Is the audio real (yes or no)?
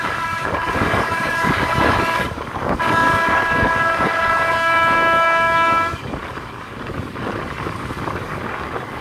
no